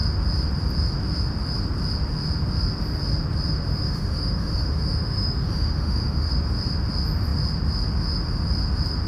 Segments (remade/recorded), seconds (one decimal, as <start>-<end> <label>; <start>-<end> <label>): 0.0-3.7 recorded; 3.7-6.3 remade; 6.3-9.1 recorded